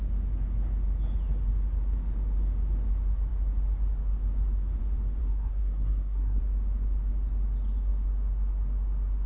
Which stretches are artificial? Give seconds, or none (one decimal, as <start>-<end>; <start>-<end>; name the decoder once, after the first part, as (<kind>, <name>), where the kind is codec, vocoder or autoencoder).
5.2-6.4 (codec, SNAC)